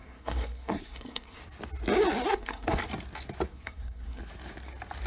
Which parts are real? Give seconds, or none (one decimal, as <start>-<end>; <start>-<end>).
1.4-2.3; 2.8-3.5; 4.2-5.1